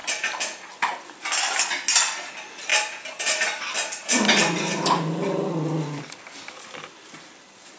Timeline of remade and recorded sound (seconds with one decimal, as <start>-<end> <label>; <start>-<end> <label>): 0.0-7.8 recorded